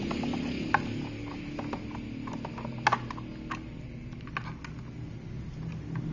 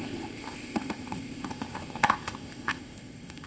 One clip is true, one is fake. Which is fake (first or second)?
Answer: second